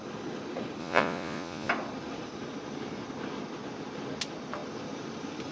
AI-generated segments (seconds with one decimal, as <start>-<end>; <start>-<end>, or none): 0.8-1.7